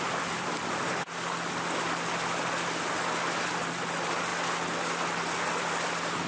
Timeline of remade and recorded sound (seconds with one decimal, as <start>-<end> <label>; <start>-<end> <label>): 0.0-6.3 recorded